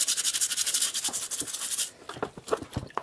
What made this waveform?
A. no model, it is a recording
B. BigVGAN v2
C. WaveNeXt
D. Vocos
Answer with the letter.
A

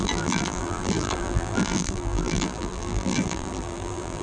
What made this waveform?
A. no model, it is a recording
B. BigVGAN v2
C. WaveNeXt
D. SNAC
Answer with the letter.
B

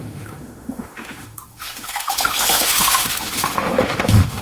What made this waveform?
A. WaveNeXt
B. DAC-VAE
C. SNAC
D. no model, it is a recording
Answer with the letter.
B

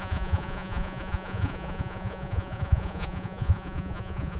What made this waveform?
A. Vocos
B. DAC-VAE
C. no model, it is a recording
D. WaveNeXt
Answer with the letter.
A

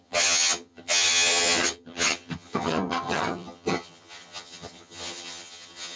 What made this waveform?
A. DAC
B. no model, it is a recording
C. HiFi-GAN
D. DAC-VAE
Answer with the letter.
C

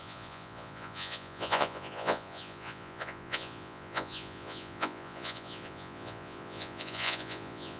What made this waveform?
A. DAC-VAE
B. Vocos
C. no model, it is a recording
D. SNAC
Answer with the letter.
B